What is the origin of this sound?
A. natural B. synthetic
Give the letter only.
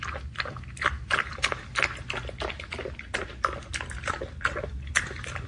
A